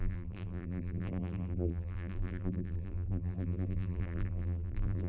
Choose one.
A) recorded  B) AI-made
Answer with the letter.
B